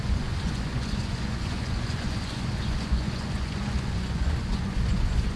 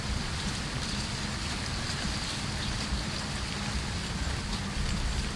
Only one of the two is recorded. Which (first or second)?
second